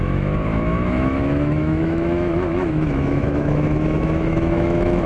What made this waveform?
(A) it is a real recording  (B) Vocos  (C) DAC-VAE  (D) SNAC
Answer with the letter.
C